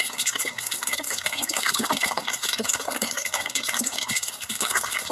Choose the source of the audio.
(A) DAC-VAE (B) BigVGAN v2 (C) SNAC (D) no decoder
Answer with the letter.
C